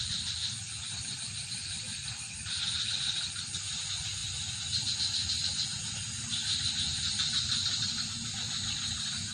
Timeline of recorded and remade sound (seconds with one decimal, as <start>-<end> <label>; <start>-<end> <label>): 0.0-9.3 recorded